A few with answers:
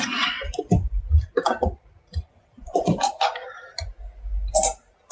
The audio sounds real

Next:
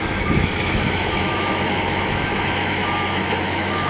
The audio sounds fake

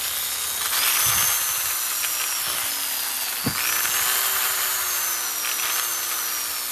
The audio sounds real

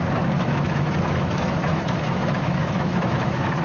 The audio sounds fake